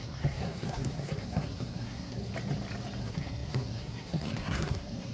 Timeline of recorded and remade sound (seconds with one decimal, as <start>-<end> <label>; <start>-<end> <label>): 0.0-2.3 remade; 2.3-3.0 recorded; 3.0-5.1 remade